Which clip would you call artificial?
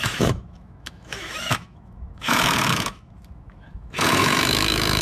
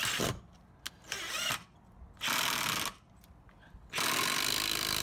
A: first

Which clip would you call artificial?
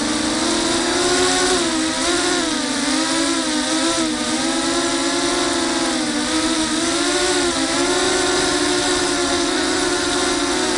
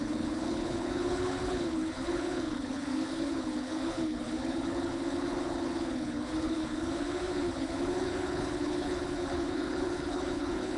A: second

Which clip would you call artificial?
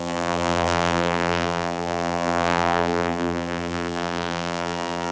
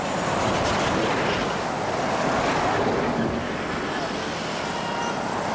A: first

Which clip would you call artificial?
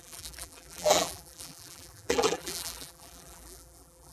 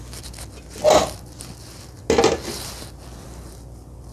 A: first